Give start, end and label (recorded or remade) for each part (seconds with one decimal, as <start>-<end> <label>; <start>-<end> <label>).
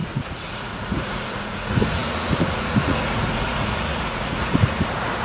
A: 0.0-5.2 remade